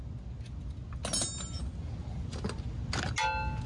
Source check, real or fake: real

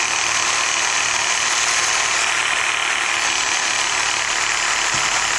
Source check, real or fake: real